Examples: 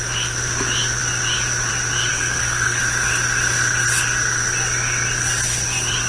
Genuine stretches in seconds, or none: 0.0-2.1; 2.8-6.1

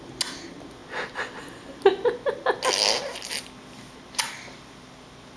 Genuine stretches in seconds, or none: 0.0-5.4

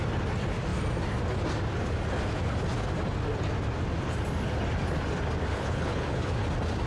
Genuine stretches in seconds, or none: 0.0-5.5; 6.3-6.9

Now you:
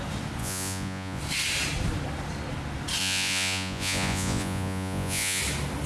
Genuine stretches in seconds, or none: 0.0-0.4; 1.2-3.0; 5.4-5.9